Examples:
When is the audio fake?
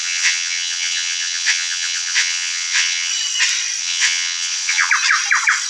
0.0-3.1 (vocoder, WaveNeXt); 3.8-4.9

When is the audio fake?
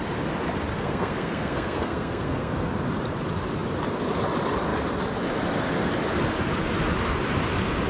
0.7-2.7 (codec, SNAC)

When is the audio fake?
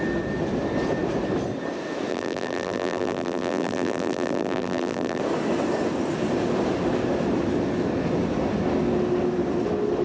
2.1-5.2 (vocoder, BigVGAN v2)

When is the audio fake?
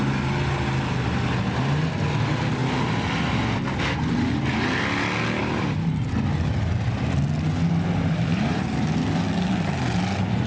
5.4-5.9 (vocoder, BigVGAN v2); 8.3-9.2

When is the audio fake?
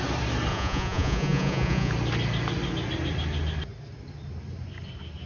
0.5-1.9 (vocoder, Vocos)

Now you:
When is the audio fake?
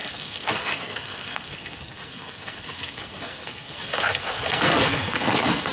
0.0-5.7 (codec, SNAC)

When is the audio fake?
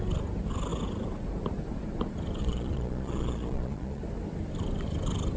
2.4-4.0 (vocoder, Vocos)